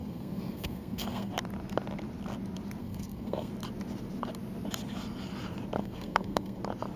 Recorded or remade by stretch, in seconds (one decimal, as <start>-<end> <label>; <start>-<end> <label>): 0.0-1.3 remade; 1.3-2.8 recorded; 2.8-3.5 remade; 3.5-5.8 recorded; 5.8-6.6 remade; 6.6-7.0 recorded